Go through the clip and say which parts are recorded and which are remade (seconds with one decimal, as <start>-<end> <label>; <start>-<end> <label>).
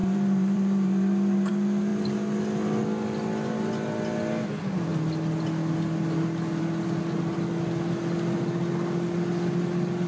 0.0-1.5 remade; 1.5-10.1 recorded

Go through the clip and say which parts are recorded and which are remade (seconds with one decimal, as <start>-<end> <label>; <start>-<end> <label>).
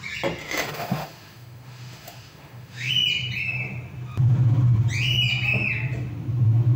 0.0-0.4 recorded; 0.4-2.9 remade; 2.9-6.8 recorded